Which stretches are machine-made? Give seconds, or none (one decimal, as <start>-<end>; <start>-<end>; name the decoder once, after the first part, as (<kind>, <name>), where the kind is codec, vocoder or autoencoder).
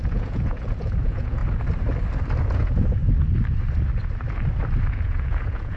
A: 0.0-1.4 (vocoder, Vocos); 2.4-3.0; 4.9-5.8